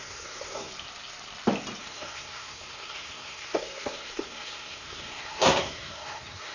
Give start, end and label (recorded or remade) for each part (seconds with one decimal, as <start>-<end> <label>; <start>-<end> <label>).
0.0-0.7 remade; 0.7-1.8 recorded; 1.8-6.5 remade